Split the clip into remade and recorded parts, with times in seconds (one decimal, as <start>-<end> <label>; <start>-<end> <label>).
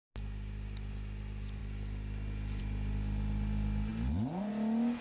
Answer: 0.0-5.0 recorded